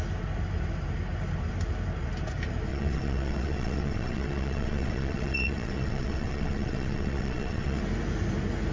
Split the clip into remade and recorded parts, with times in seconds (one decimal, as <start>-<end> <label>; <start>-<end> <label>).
0.0-2.7 recorded; 2.7-7.8 remade; 7.8-8.7 recorded